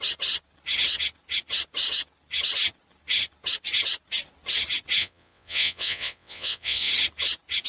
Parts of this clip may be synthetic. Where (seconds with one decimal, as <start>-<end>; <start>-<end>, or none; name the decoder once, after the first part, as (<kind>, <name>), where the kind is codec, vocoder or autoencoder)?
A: 5.0-6.9 (vocoder, WaveNeXt)